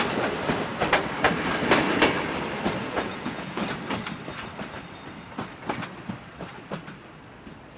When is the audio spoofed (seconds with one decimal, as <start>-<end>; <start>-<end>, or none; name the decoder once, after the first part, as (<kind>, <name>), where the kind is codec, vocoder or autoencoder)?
2.8-3.6 (vocoder, Vocos)